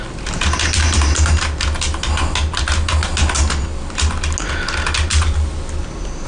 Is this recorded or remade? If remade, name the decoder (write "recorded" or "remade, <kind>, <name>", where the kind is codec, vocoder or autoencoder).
recorded